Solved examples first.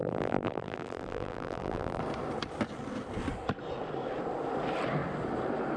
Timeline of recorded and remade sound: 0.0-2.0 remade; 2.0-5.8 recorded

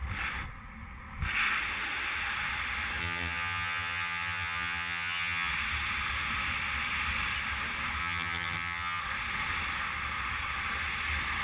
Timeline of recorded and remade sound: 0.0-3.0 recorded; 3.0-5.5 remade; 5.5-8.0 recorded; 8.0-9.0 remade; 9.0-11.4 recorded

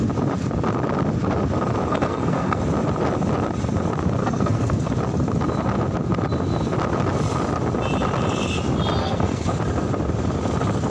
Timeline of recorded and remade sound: 0.0-1.9 recorded; 1.9-2.6 remade; 2.6-4.2 recorded; 4.2-4.9 remade; 4.9-9.0 recorded; 9.0-9.5 remade; 9.5-10.9 recorded

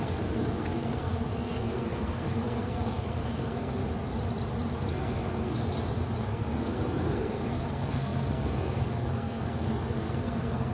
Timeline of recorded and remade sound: 0.0-3.8 remade; 3.8-4.9 recorded; 4.9-5.6 remade; 5.6-6.2 recorded; 6.2-10.7 remade